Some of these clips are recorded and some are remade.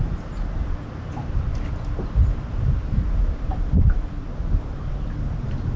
recorded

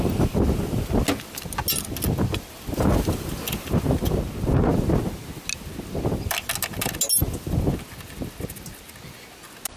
recorded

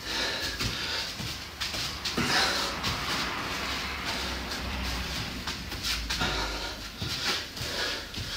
remade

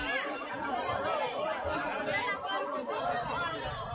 recorded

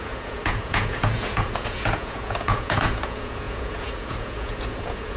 remade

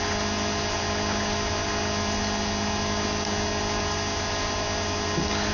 recorded